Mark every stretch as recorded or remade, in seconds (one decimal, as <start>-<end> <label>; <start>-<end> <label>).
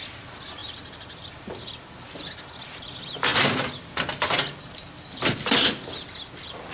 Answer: 0.0-6.7 recorded